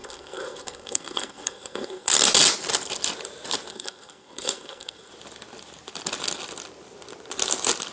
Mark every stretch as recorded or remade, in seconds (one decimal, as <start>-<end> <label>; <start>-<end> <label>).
0.0-2.1 remade; 2.1-3.7 recorded; 3.7-5.1 remade; 5.1-7.9 recorded